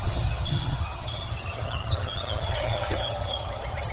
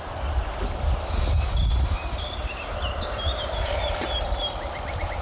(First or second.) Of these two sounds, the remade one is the first